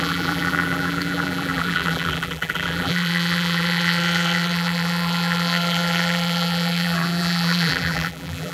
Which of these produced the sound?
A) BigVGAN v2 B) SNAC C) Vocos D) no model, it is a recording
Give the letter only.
A